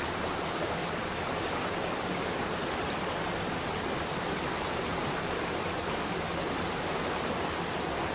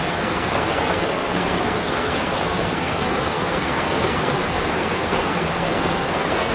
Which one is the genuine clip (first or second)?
first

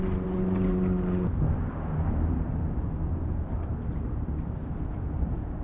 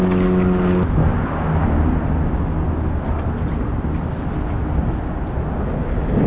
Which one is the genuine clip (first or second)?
second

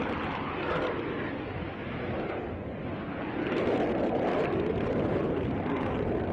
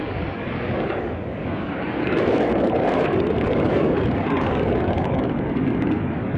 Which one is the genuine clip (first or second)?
first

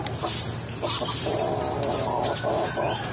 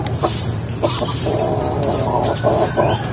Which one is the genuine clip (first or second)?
first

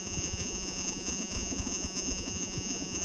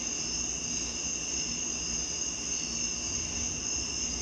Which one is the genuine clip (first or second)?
second